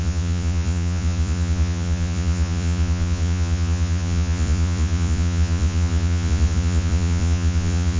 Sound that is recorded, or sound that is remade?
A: remade